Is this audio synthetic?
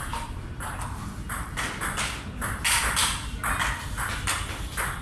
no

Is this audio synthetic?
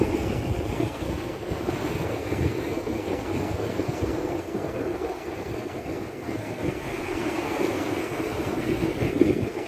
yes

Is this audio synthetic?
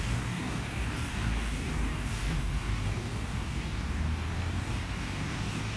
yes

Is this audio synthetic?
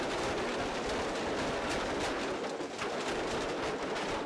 no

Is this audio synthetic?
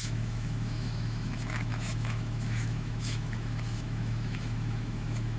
yes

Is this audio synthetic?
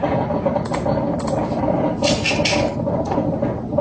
no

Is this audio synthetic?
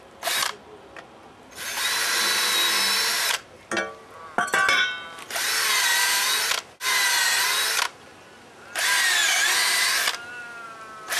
no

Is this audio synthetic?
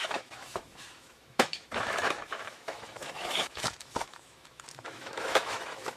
yes